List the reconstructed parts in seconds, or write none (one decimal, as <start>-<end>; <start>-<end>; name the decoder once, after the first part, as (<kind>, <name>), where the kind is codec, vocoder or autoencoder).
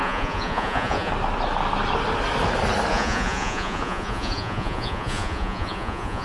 0.0-1.1 (vocoder, Vocos); 2.9-6.2